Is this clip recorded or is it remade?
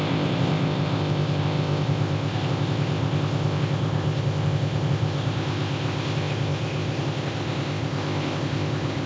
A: remade